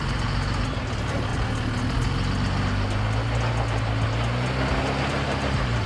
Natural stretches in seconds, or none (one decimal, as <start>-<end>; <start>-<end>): 1.3-4.8